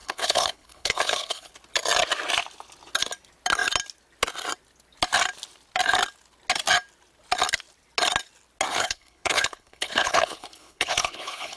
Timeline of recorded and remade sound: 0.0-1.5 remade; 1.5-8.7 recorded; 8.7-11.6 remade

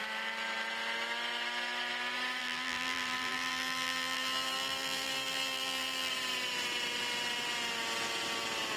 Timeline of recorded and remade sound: 0.0-2.4 recorded; 2.4-6.1 remade; 6.1-8.8 recorded

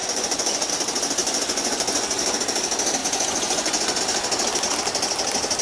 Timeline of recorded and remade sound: 0.0-0.7 remade; 0.7-1.2 recorded; 1.2-2.4 remade; 2.4-3.0 recorded; 3.0-4.0 remade; 4.0-5.6 recorded

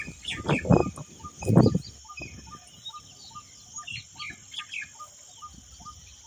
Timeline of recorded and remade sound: 0.0-6.3 recorded

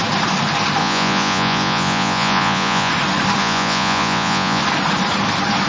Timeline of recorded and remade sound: 0.0-0.8 recorded; 0.8-2.9 remade; 2.9-3.4 recorded; 3.4-4.6 remade; 4.6-5.7 recorded